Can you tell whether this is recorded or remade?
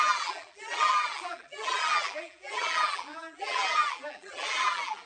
remade